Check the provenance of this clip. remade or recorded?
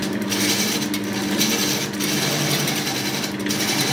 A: recorded